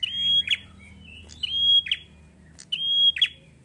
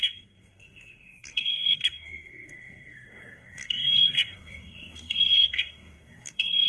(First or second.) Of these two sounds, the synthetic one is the second